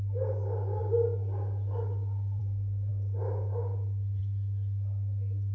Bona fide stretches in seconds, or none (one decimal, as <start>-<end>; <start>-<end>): 0.0-5.5